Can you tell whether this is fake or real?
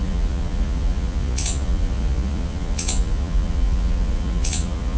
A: fake